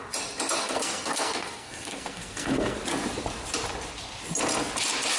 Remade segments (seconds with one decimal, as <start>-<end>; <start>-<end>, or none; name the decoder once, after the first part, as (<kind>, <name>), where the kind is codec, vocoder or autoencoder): 0.6-2.8 (codec, SNAC)